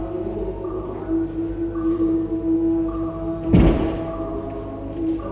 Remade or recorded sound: recorded